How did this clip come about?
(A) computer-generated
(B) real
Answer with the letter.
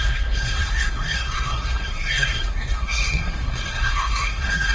A